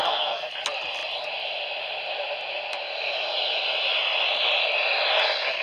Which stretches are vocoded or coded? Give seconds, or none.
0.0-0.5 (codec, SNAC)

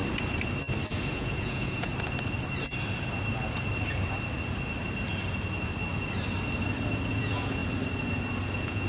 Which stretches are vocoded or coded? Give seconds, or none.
0.9-1.9 (vocoder, Vocos); 7.1-7.6; 8.5-8.9

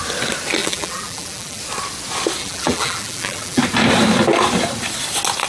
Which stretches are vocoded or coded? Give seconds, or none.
0.6-1.6 (vocoder, BigVGAN v2); 2.4-3.6

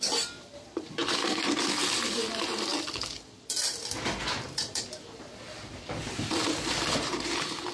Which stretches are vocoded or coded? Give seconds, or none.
0.0-1.0 (vocoder, BigVGAN v2); 1.6-7.7

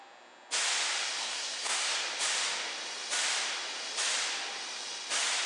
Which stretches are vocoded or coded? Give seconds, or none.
1.2-1.9 (codec, SNAC)

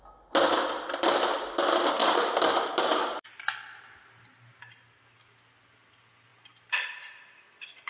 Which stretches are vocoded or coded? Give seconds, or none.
none